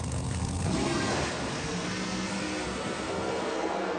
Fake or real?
fake